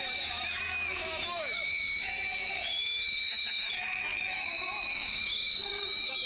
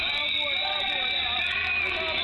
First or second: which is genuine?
second